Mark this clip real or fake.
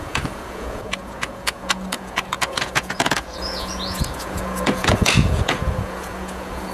fake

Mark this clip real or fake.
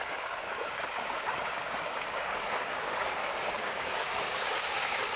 fake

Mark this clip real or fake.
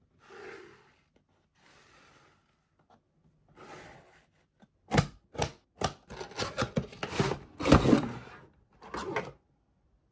real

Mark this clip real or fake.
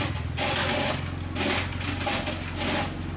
real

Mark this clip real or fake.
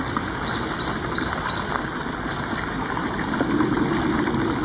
real